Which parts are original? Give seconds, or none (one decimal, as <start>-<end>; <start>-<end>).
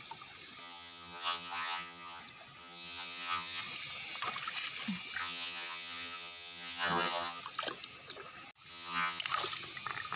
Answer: 0.0-0.6; 2.2-2.6; 3.6-5.2; 7.4-8.7; 9.2-10.2